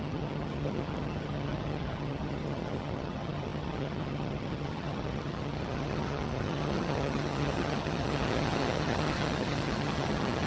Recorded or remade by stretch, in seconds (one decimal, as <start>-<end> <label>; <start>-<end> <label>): 0.0-10.5 remade